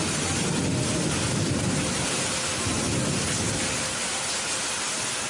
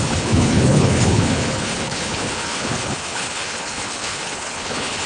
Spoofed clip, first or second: second